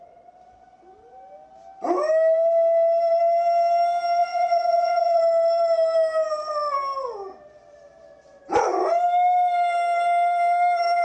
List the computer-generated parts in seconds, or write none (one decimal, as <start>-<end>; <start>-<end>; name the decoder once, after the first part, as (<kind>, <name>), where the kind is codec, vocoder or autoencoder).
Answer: 4.2-5.2 (vocoder, Vocos)